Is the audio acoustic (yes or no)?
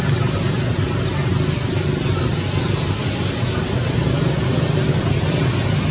yes